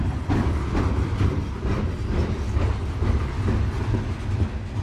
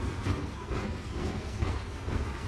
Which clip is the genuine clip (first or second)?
first